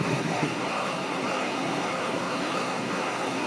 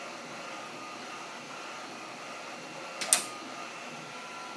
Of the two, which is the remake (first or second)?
first